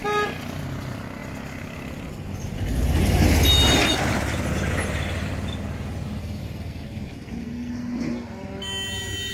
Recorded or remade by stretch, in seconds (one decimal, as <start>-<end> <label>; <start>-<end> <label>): 0.0-6.2 recorded; 6.2-8.6 remade; 8.6-9.3 recorded